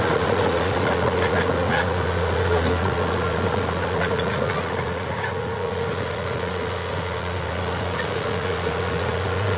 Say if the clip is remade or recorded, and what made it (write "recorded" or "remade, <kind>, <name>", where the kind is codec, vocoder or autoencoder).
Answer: remade, vocoder, Vocos